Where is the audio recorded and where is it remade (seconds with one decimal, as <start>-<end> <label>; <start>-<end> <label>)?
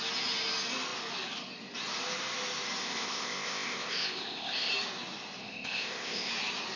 0.0-2.8 recorded; 2.8-4.7 remade; 4.7-5.4 recorded; 5.4-6.3 remade; 6.3-6.8 recorded